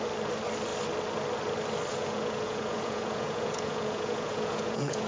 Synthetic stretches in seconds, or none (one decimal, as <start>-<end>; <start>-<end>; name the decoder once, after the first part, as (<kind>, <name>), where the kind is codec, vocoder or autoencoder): 1.9-5.1 (vocoder, Vocos)